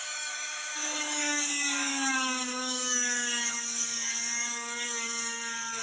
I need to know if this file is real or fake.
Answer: fake